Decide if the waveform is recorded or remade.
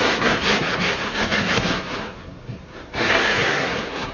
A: remade